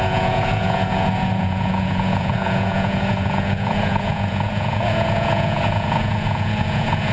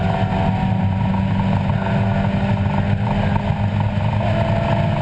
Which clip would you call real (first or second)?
second